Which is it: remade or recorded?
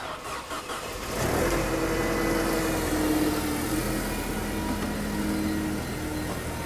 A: recorded